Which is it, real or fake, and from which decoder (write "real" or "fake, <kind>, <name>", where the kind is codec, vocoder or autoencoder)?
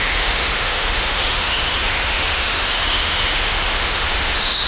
fake, autoencoder, DAC-VAE